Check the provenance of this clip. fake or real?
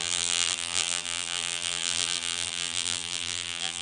fake